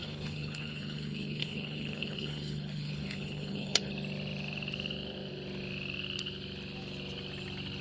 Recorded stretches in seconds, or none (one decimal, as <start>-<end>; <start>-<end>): 3.9-7.8